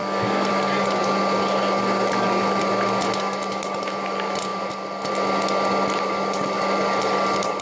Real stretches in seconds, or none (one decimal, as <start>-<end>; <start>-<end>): 0.5-7.6